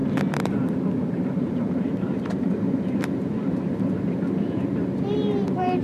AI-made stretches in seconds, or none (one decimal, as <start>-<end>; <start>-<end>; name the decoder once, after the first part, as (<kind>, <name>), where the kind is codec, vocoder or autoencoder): 0.0-5.8 (vocoder, BigVGAN v2)